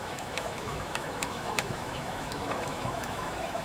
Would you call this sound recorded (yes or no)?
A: no